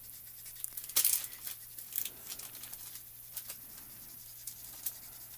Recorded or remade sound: recorded